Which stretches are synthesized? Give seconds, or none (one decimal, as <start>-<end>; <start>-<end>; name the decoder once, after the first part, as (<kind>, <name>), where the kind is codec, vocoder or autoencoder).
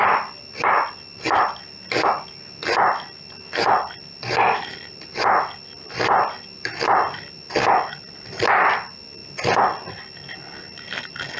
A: none